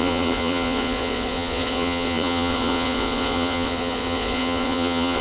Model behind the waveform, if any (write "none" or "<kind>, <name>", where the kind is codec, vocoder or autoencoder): vocoder, Vocos